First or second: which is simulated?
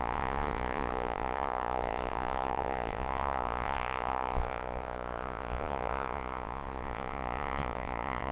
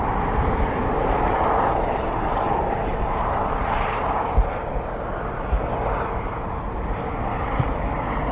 first